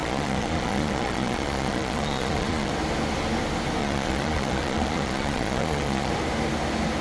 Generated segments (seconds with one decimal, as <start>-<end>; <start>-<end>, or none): 0.0-2.7; 3.8-6.1